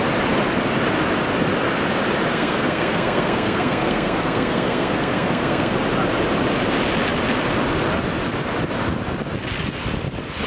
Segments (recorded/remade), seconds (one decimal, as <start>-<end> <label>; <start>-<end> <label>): 0.0-2.3 recorded; 2.3-5.7 remade; 5.7-10.5 recorded